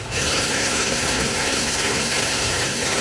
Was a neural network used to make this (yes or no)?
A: yes